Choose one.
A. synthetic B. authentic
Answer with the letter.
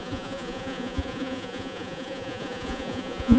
A